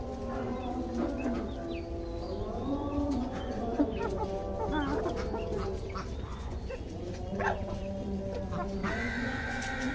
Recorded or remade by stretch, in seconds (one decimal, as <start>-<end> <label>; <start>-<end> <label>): 0.0-2.4 recorded; 2.4-4.2 remade; 4.2-6.3 recorded; 6.3-7.8 remade; 7.8-8.8 recorded; 8.8-9.9 remade